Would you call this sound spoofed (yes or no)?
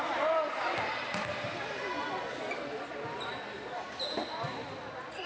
no